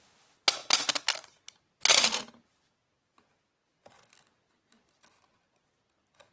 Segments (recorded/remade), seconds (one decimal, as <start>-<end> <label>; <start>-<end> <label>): 0.0-6.3 recorded

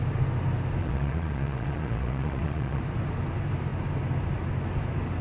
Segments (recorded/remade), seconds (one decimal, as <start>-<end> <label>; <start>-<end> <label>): 0.0-0.8 recorded; 0.8-2.8 remade; 2.8-5.2 recorded

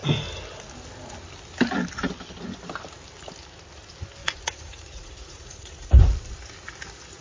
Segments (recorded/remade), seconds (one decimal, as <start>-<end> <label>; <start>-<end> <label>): 0.0-4.2 recorded; 4.2-5.9 remade; 5.9-7.2 recorded

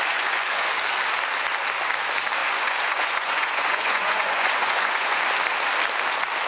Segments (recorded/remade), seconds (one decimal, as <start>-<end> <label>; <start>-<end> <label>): 0.0-0.7 remade; 0.7-2.4 recorded; 2.4-5.2 remade; 5.2-6.5 recorded

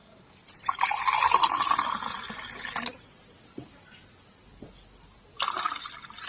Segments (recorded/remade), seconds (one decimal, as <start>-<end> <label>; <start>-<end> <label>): 0.0-6.3 recorded